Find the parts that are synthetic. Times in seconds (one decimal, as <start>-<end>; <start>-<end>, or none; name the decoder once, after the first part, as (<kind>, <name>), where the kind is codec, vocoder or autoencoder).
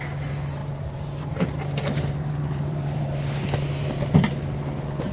0.6-3.0 (vocoder, BigVGAN v2)